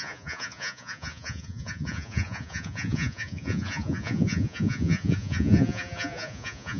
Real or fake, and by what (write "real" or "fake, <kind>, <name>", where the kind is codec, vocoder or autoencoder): fake, vocoder, Vocos